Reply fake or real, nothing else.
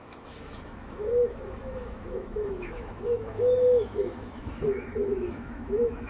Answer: fake